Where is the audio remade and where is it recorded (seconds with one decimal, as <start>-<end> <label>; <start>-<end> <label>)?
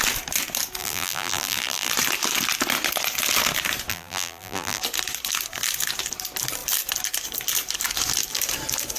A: 0.0-0.8 recorded; 0.8-1.9 remade; 1.9-3.9 recorded; 3.9-4.8 remade; 4.8-9.0 recorded